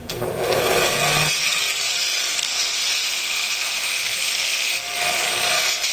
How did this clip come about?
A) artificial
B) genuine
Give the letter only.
A